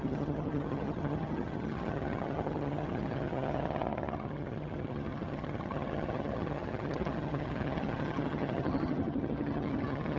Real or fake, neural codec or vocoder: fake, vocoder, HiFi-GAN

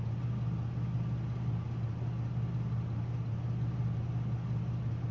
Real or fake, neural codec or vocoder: real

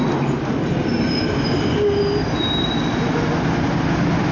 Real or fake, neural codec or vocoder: real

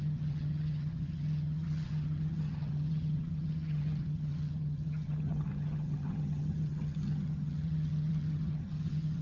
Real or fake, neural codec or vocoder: fake, vocoder, HiFi-GAN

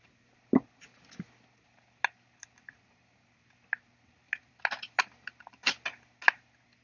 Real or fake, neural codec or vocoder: real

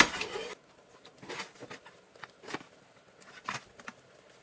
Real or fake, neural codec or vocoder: real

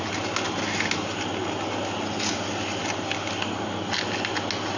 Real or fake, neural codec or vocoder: real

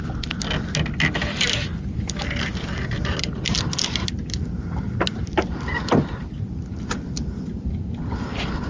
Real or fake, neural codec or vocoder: real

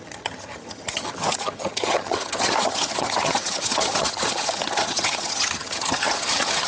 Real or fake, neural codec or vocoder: fake, vocoder, HiFi-GAN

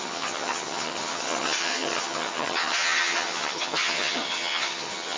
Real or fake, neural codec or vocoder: fake, vocoder, HiFi-GAN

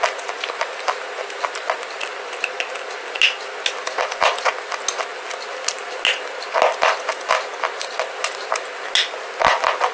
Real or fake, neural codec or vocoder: real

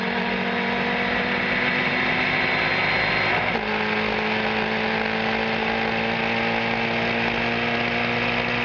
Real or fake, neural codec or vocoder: real